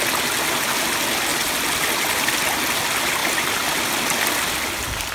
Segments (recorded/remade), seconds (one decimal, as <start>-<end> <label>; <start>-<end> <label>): 0.0-5.1 recorded